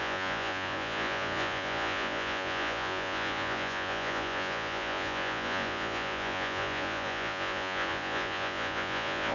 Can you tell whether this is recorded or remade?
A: remade